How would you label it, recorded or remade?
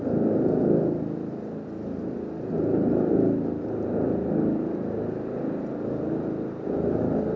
recorded